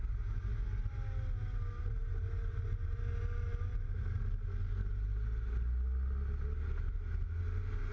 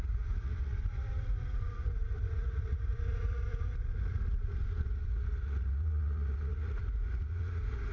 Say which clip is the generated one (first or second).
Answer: second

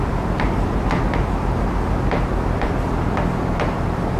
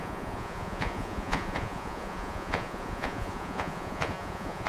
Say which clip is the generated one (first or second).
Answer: second